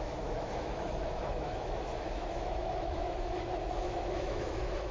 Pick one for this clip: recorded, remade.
remade